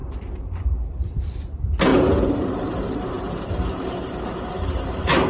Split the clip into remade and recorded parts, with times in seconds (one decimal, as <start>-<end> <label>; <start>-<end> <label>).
0.0-0.8 remade; 0.8-1.9 recorded; 1.9-5.3 remade